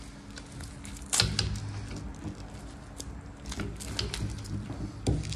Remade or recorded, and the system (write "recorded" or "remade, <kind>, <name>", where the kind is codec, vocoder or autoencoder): recorded